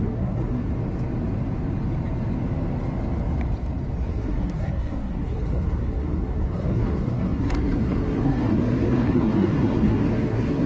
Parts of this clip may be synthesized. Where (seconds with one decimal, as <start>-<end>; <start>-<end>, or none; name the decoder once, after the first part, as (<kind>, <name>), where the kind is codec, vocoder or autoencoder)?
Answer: 0.0-0.7 (codec, SNAC); 4.1-10.7